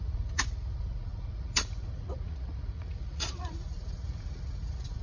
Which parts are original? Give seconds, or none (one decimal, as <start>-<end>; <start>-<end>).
none